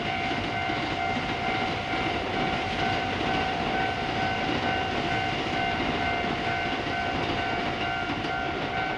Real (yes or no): yes